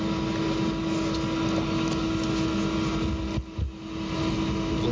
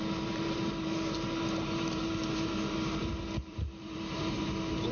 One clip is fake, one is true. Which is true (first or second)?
first